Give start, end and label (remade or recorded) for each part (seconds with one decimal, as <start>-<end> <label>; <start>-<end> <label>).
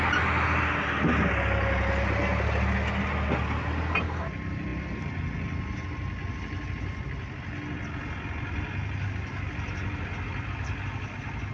0.0-11.5 recorded